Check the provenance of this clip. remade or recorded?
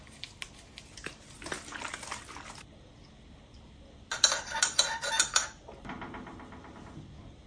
recorded